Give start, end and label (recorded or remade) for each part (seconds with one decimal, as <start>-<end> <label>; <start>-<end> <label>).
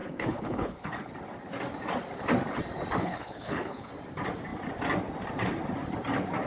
0.0-1.1 remade; 1.1-3.0 recorded; 3.0-3.9 remade; 3.9-6.5 recorded